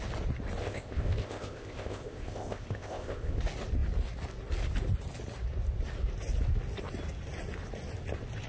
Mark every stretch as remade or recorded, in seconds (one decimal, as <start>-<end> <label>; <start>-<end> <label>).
0.0-0.6 recorded; 0.6-3.4 remade; 3.4-8.5 recorded